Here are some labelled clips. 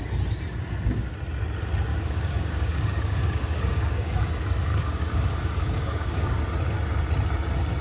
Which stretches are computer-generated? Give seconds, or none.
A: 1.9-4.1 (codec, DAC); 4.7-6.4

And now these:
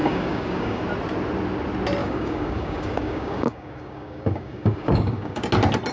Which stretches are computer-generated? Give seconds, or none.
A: 0.0-0.8 (codec, DAC); 2.0-5.5

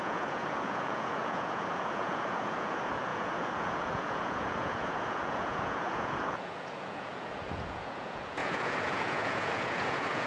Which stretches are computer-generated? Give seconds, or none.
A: 0.0-10.3 (vocoder, Vocos)

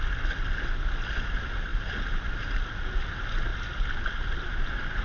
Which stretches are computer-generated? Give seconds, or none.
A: none

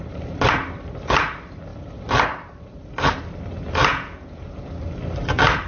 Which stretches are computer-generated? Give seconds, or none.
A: 3.9-4.7 (vocoder, Vocos)

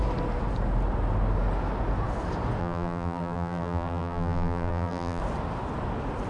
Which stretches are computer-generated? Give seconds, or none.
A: 2.6-5.2 (vocoder, BigVGAN v2)

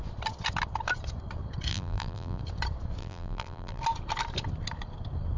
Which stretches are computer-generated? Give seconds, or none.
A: 1.7-2.4 (vocoder, BigVGAN v2); 3.0-3.8